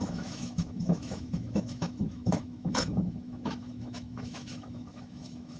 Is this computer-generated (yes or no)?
yes